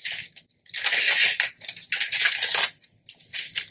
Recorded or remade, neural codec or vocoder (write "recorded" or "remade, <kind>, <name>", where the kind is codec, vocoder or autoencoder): recorded